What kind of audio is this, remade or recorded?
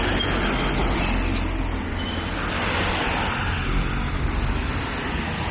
recorded